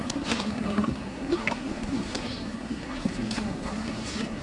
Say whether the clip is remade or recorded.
remade